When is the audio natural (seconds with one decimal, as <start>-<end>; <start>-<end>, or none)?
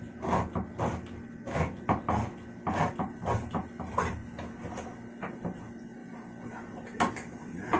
0.0-7.8